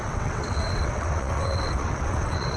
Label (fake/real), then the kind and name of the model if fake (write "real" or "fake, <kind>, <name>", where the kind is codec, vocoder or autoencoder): fake, vocoder, WaveNeXt